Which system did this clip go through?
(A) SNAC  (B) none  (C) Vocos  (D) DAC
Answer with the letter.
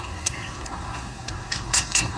A